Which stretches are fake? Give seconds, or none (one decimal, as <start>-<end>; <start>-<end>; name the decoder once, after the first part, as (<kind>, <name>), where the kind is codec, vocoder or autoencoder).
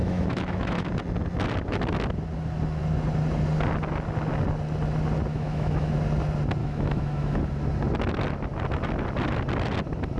0.0-0.9 (autoencoder, DAC-VAE); 5.3-5.9; 6.6-7.4